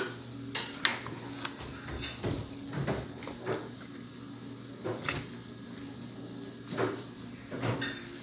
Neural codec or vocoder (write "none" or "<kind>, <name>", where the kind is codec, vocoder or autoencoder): none